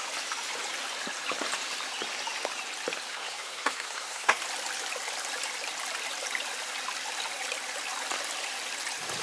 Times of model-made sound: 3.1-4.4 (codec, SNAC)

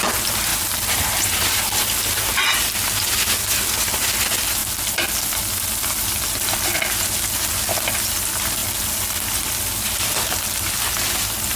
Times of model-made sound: none

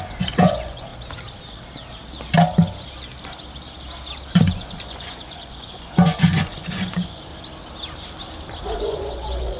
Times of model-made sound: 0.0-0.9 (vocoder, Vocos); 4.3-7.3; 8.7-9.6

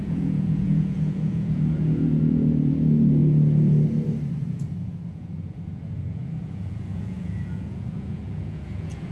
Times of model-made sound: 0.0-3.2 (vocoder, Vocos); 4.5-9.1